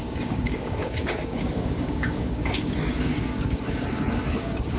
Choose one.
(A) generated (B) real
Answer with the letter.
A